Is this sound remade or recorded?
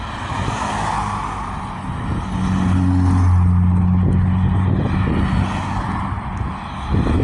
recorded